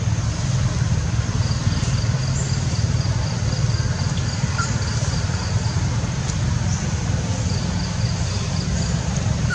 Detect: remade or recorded remade